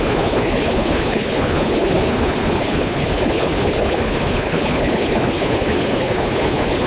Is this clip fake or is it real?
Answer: fake